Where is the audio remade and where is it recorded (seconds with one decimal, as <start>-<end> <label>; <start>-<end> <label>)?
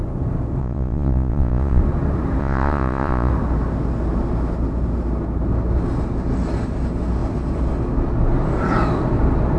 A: 0.0-0.6 recorded; 0.6-1.8 remade; 1.8-2.4 recorded; 2.4-3.3 remade; 3.3-9.6 recorded